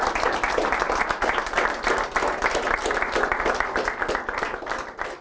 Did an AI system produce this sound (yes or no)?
no